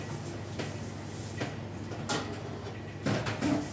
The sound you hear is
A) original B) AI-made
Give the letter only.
A